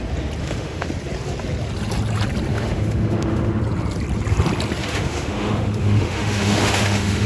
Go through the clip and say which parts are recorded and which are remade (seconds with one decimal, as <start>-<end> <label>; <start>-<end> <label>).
0.0-0.4 recorded; 0.4-0.9 remade; 0.9-2.5 recorded; 2.5-3.6 remade; 3.6-4.8 recorded; 4.8-7.3 remade